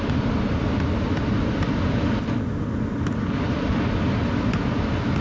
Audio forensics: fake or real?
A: real